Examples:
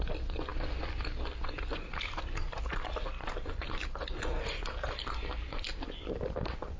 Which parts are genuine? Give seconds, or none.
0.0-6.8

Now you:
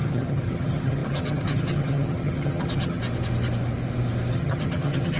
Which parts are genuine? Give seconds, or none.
3.0-4.3

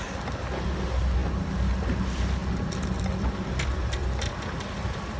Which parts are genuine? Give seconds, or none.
0.0-5.2

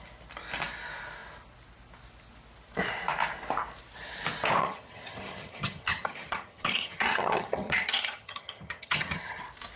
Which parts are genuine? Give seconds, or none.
0.0-4.6; 9.4-9.8